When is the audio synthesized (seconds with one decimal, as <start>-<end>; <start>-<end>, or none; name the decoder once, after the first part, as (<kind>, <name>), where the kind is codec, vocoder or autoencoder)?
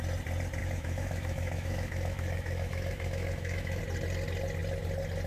0.6-3.8 (autoencoder, DAC-VAE)